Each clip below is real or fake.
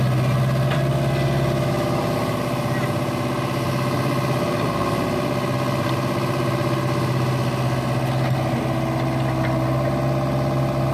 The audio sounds real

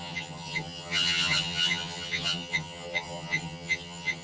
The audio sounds fake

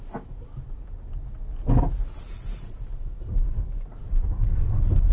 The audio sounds real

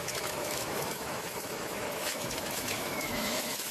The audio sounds fake